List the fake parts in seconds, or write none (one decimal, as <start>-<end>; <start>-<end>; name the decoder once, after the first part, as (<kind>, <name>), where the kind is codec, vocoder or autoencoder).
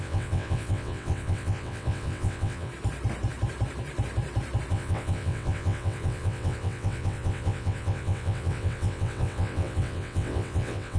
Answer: 0.0-2.7 (vocoder, WaveNeXt); 4.7-11.0